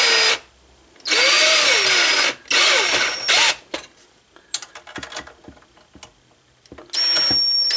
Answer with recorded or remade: recorded